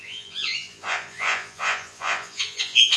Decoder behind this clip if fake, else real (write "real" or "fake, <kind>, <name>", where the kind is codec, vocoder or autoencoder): fake, vocoder, Vocos